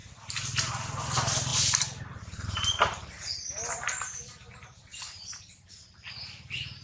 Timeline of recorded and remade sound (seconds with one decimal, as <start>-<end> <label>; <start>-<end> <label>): 0.0-4.9 recorded; 4.9-6.1 remade; 6.1-6.8 recorded